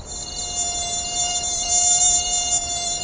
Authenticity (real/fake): real